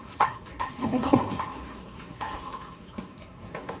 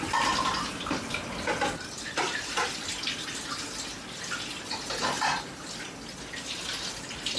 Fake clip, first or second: first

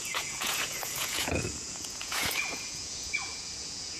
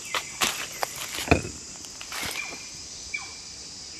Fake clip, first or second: first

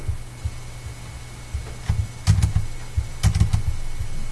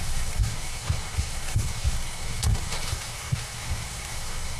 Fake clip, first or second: second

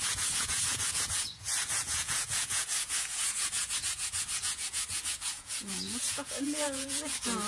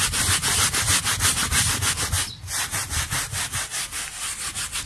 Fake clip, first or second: first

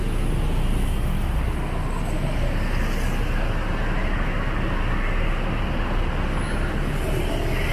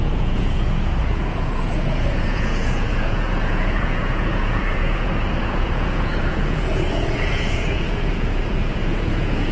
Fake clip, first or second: second